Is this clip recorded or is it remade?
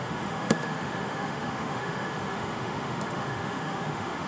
remade